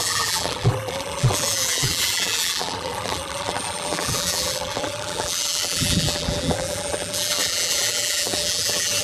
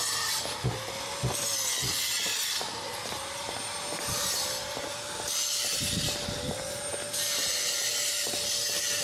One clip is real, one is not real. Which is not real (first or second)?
first